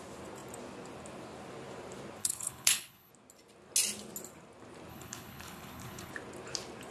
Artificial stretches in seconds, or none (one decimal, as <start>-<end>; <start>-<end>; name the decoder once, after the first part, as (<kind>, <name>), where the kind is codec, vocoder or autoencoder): 2.2-3.1 (codec, HILCodec); 4.9-6.1